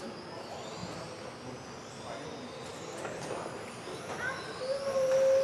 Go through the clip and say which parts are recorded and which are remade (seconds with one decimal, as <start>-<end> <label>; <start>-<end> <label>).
0.0-5.4 recorded